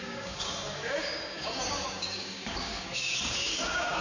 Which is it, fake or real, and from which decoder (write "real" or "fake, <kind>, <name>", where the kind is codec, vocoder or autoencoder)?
fake, codec, DAC